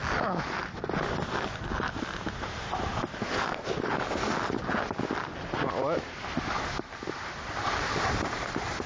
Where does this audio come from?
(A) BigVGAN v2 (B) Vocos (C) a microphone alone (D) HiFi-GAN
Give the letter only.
C